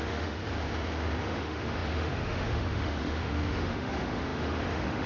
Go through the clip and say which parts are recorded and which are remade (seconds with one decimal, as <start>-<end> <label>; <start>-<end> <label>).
0.0-0.4 remade; 0.4-1.2 recorded; 1.2-5.1 remade